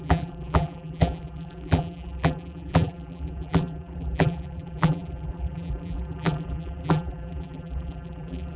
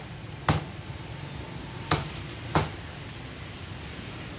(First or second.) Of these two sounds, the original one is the second